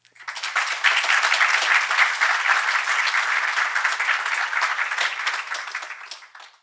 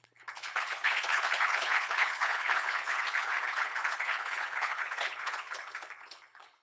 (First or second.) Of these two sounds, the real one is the first